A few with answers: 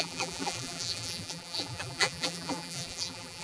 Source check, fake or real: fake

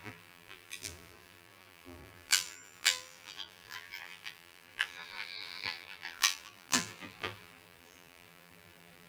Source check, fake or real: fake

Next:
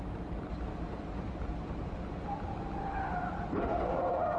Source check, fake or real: fake